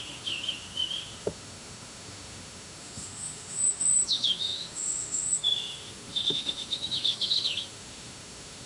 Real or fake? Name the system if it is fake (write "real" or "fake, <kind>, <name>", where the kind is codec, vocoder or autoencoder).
fake, autoencoder, DAC-VAE